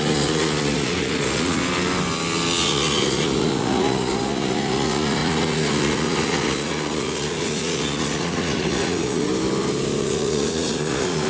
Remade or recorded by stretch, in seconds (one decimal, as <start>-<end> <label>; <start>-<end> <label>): 0.0-1.6 remade; 1.6-2.6 recorded; 2.6-9.3 remade; 9.3-10.0 recorded; 10.0-11.3 remade